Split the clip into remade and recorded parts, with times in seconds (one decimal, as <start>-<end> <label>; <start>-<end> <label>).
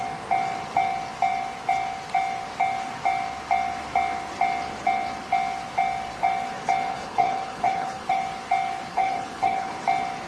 0.0-6.9 recorded; 6.9-8.2 remade; 8.2-8.9 recorded; 8.9-9.7 remade; 9.7-10.3 recorded